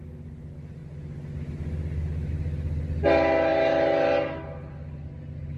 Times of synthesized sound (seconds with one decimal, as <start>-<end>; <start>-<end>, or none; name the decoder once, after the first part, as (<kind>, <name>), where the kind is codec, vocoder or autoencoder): none